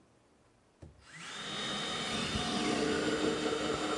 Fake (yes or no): no